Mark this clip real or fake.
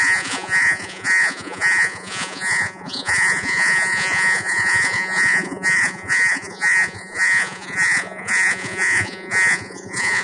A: fake